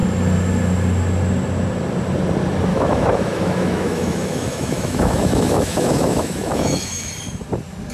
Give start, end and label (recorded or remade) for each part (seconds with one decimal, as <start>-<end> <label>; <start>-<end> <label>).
0.0-2.7 recorded; 2.7-7.1 remade; 7.1-7.9 recorded

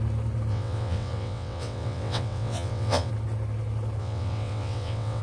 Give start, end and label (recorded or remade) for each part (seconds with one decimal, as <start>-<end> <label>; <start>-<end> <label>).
0.0-0.5 recorded; 0.5-3.1 remade; 3.1-4.0 recorded; 4.0-5.2 remade

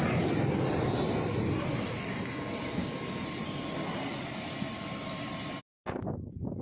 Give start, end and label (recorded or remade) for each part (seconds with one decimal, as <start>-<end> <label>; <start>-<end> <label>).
0.0-6.6 recorded

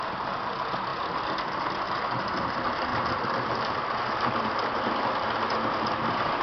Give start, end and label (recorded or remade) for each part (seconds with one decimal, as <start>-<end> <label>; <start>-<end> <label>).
0.0-2.9 recorded; 2.9-4.0 remade; 4.0-6.4 recorded

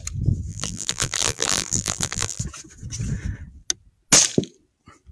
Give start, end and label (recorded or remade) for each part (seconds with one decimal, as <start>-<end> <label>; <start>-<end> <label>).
0.0-0.5 recorded; 0.5-2.4 remade; 2.4-5.1 recorded

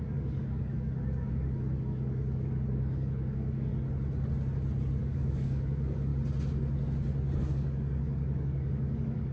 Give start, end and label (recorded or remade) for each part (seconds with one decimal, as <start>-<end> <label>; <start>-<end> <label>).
0.0-3.7 remade; 3.7-5.0 recorded; 5.0-6.1 remade; 6.1-7.4 recorded; 7.4-9.3 remade

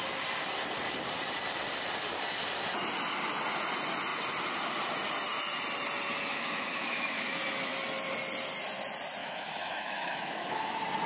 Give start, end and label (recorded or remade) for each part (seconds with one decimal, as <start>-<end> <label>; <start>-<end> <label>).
0.0-6.3 recorded; 6.3-7.2 remade; 7.2-9.2 recorded; 9.2-10.7 remade; 10.7-11.1 recorded